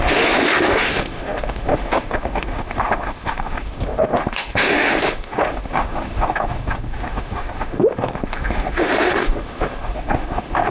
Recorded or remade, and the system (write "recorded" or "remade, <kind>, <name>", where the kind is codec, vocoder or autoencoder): remade, autoencoder, DAC-VAE